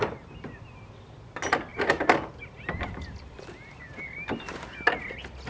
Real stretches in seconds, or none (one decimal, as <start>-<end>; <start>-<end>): 0.0-1.7; 5.0-5.5